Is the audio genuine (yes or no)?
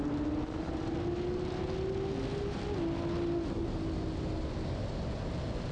yes